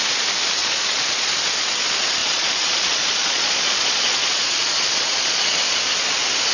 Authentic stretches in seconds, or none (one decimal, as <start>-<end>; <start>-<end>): 0.0-0.6; 1.3-2.2; 5.8-6.5